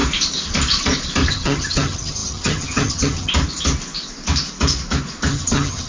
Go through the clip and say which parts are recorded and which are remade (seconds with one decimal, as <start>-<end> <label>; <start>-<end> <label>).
0.0-1.3 recorded; 1.3-3.3 remade; 3.3-5.3 recorded; 5.3-5.9 remade